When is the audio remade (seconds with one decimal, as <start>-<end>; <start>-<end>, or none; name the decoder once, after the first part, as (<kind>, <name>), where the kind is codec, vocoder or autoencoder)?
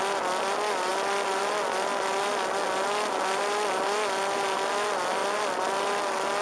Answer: none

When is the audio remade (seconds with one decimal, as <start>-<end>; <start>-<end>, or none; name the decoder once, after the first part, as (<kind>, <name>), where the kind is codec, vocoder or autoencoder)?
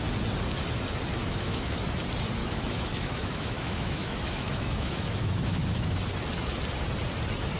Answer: 1.2-1.8 (autoencoder, DAC-VAE); 2.4-5.9